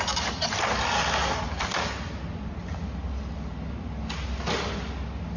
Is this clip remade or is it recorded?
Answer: recorded